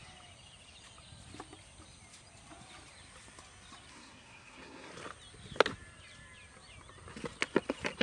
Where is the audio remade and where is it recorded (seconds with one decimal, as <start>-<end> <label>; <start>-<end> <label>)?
0.0-3.9 recorded; 3.9-4.9 remade; 4.9-8.0 recorded